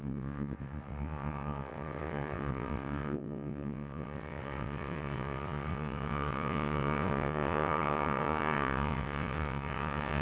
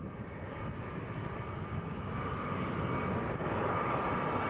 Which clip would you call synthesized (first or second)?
first